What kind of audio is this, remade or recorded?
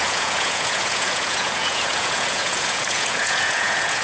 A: remade